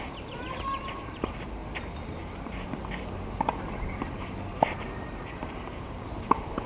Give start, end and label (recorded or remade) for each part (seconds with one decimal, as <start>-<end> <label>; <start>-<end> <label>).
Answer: 0.0-1.6 remade; 1.6-5.5 recorded; 5.5-6.7 remade